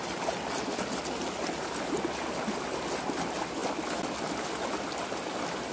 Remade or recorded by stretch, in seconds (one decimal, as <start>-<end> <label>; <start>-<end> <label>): 0.0-5.7 recorded